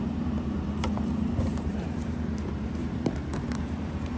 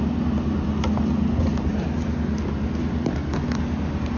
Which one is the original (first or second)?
second